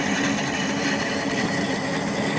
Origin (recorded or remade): recorded